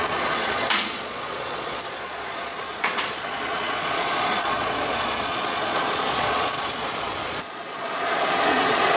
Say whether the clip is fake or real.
fake